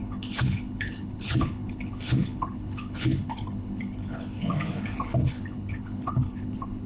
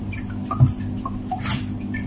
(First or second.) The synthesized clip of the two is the first